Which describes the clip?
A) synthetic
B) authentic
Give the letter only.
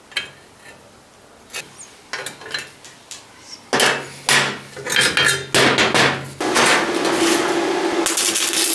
B